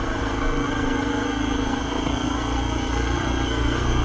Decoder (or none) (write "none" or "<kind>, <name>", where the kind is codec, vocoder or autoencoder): codec, SNAC